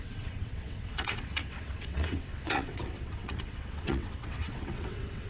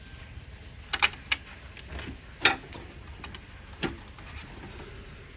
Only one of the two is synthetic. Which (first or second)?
first